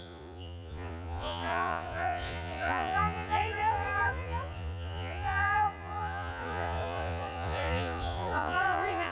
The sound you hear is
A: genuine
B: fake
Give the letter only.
B